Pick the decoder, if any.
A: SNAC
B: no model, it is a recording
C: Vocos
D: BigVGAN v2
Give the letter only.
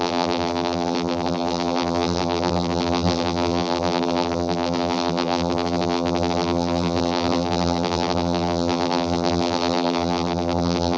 D